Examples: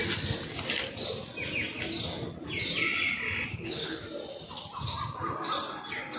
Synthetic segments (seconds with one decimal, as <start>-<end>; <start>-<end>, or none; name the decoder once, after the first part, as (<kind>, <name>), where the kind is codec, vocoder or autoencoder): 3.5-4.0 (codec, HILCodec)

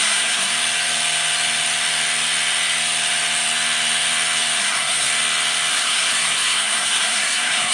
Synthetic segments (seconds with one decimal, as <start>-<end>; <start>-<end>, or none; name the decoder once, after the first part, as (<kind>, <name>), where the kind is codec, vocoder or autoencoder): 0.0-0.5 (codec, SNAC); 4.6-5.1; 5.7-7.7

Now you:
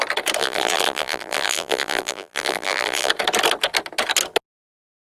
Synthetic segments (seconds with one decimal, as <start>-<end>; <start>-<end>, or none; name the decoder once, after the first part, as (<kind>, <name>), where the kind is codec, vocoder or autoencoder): 0.4-3.1 (vocoder, BigVGAN v2)

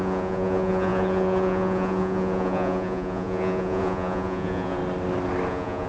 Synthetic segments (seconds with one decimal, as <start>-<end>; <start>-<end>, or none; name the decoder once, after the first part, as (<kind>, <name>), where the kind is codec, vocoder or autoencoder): 0.0-4.8 (vocoder, Vocos); 5.5-5.9

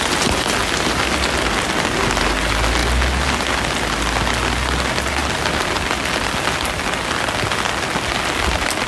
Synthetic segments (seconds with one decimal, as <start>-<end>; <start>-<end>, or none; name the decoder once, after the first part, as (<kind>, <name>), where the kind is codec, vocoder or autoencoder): none

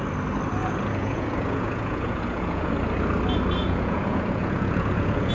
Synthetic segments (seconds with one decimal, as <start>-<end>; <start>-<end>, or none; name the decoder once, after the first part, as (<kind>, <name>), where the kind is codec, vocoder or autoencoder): 0.6-2.7 (vocoder, Vocos); 3.6-5.3